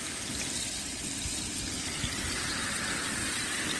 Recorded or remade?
recorded